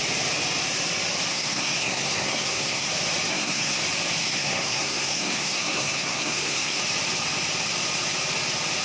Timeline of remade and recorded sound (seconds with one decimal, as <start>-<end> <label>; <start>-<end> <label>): 0.0-1.3 recorded; 1.3-2.9 remade; 2.9-3.3 recorded; 3.3-3.8 remade; 3.8-4.2 recorded; 4.2-6.8 remade; 6.8-8.8 recorded

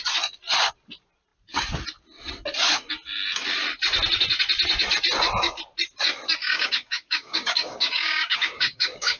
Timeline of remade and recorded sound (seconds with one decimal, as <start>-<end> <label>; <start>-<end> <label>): 0.0-6.4 recorded; 6.4-9.2 remade

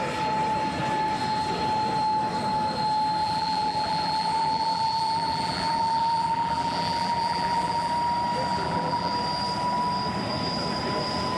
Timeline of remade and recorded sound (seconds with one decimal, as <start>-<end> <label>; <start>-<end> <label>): 0.0-3.2 recorded; 3.2-7.9 remade; 7.9-8.5 recorded; 8.5-9.1 remade; 9.1-11.4 recorded